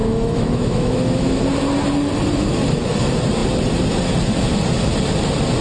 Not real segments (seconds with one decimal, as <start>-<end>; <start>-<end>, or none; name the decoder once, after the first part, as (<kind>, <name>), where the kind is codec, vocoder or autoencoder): 0.0-1.4 (autoencoder, DAC-VAE)